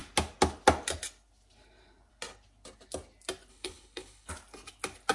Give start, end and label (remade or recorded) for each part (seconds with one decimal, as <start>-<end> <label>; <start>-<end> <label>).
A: 0.0-3.5 recorded; 3.5-4.3 remade; 4.3-5.1 recorded